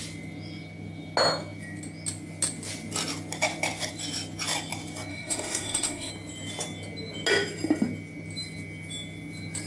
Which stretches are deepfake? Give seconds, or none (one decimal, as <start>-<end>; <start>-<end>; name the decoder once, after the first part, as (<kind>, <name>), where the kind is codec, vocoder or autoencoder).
5.1-6.1 (autoencoder, DAC-VAE)